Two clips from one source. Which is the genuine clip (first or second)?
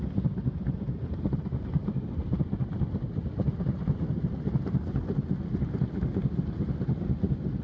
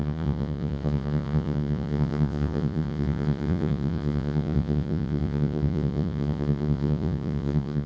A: first